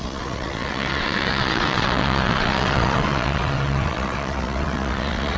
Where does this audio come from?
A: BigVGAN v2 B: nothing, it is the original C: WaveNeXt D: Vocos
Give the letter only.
C